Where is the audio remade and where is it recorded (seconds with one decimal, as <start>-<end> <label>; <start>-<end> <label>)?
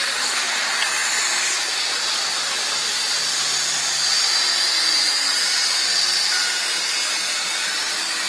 0.0-1.0 recorded; 1.0-4.3 remade; 4.3-8.3 recorded